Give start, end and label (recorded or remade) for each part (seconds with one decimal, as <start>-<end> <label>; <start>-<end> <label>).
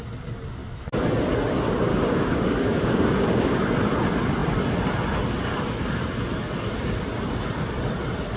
0.0-1.9 recorded; 1.9-3.6 remade; 3.6-8.4 recorded